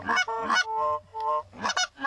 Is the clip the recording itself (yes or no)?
yes